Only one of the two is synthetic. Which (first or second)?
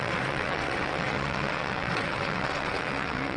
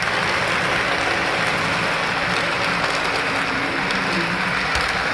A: first